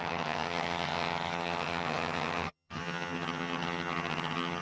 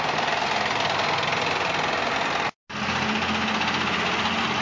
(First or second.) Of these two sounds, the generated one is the first